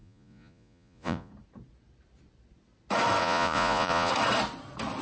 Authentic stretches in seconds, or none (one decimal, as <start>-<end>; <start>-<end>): 1.3-3.2; 4.1-5.0